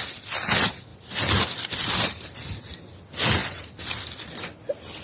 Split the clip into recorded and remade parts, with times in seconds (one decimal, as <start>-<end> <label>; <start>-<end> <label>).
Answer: 0.0-0.9 recorded; 0.9-2.6 remade; 2.6-3.4 recorded; 3.4-4.5 remade; 4.5-5.0 recorded